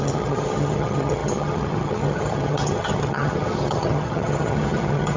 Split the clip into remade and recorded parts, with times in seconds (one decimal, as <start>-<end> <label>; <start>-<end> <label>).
0.0-5.2 remade